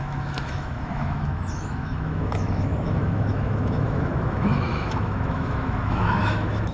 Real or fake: fake